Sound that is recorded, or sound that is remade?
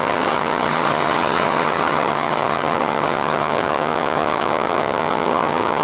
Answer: remade